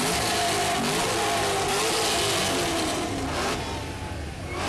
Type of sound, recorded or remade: recorded